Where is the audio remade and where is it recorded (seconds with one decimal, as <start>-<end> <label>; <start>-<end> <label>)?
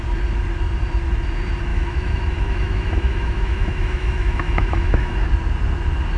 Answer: 0.0-1.7 recorded; 1.7-5.3 remade; 5.3-6.2 recorded